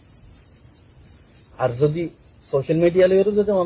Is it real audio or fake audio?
real